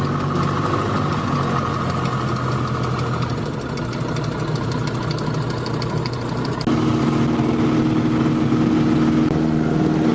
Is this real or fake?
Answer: real